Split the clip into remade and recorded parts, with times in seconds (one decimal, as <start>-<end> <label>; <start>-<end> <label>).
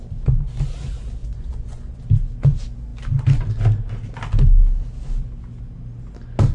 0.0-1.2 recorded; 1.2-2.0 remade; 2.0-6.5 recorded